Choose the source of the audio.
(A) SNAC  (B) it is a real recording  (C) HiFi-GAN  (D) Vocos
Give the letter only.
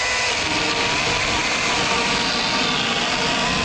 B